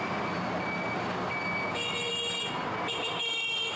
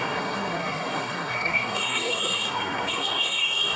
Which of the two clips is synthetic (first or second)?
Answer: second